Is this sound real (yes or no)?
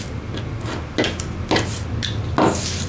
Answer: yes